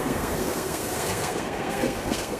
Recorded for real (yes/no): no